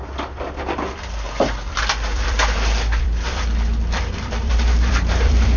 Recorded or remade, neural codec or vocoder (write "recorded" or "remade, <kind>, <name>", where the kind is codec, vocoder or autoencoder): remade, vocoder, BigVGAN v2